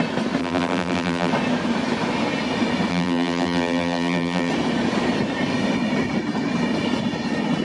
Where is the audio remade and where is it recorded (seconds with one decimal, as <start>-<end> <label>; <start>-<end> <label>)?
0.0-0.4 recorded; 0.4-1.3 remade; 1.3-2.9 recorded; 2.9-4.5 remade; 4.5-7.6 recorded